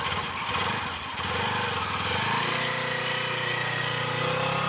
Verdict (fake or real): real